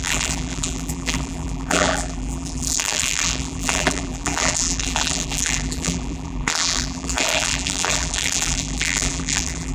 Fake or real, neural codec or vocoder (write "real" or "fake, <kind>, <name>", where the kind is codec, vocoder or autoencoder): fake, vocoder, BigVGAN v2